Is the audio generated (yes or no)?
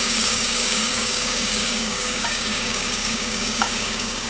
yes